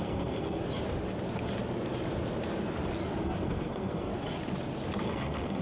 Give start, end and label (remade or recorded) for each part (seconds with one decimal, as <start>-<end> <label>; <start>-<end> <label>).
0.0-0.6 remade; 0.6-3.2 recorded; 3.2-4.1 remade; 4.1-5.0 recorded; 5.0-5.6 remade